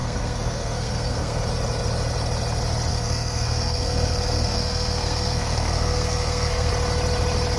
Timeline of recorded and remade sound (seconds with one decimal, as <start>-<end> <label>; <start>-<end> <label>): 0.0-1.4 remade; 1.4-2.9 recorded; 2.9-6.7 remade; 6.7-7.6 recorded